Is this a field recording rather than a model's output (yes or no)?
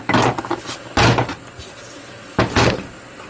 yes